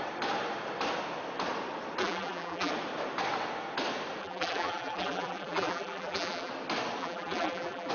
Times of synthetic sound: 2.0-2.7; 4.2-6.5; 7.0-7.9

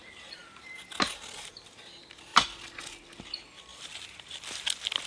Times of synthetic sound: none

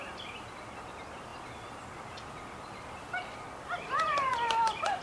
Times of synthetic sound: none

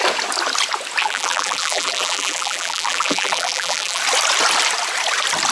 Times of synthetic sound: 1.0-4.0

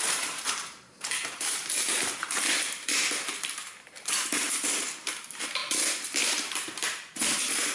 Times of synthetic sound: 0.0-5.6; 6.2-7.7

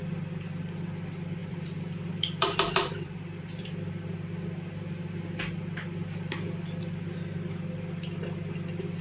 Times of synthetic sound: 1.4-3.9